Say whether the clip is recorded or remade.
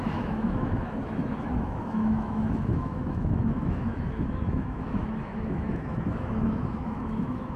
remade